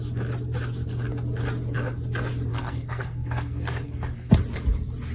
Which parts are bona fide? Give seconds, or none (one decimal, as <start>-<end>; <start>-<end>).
0.0-2.5; 4.3-5.1